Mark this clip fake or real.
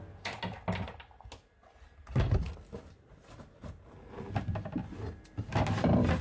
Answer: real